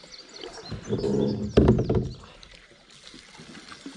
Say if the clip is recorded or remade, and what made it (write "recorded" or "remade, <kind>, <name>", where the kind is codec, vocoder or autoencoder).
recorded